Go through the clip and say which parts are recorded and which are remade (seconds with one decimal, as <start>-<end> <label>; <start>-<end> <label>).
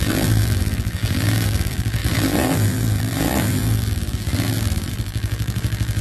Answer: 0.0-6.0 remade